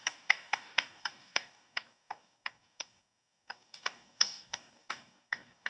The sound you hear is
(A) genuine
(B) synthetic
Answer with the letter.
B